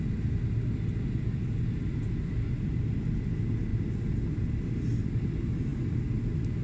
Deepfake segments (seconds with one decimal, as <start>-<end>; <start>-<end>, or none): none